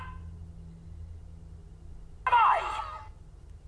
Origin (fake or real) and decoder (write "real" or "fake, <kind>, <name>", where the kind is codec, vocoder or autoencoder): real